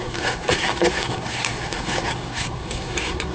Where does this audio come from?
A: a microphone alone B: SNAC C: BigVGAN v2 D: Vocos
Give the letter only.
B